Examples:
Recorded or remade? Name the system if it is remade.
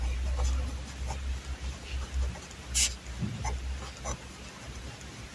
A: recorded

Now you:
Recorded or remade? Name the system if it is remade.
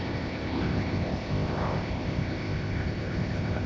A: remade, codec, ZipCodec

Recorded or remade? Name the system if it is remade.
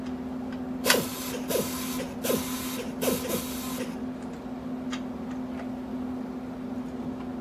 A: recorded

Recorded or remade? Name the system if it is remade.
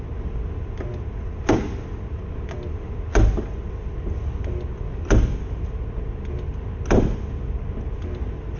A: recorded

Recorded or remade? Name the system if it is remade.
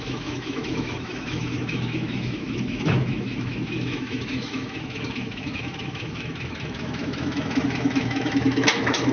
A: remade, autoencoder, DAC-VAE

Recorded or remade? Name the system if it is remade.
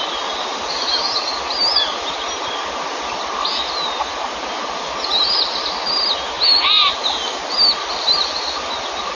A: recorded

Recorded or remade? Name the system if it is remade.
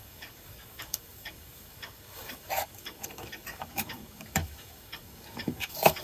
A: remade, codec, DAC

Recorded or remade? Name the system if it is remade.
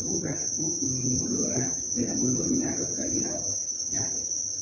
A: remade, vocoder, HiFi-GAN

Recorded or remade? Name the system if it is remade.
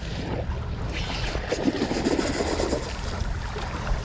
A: recorded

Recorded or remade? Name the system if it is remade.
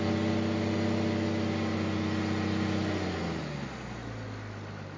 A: recorded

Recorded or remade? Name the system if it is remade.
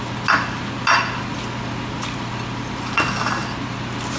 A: recorded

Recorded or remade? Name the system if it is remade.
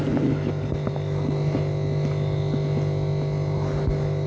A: recorded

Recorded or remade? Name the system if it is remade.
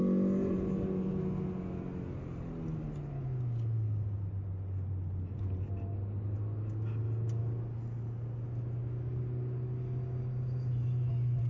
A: recorded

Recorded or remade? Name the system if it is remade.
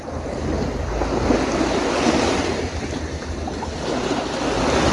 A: recorded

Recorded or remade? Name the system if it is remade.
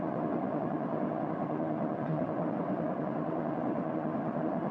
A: remade, vocoder, WaveNeXt